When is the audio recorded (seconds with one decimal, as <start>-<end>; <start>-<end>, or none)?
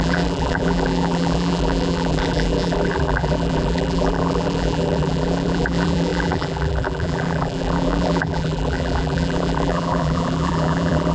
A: none